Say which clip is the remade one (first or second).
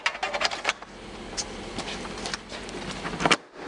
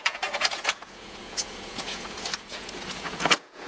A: second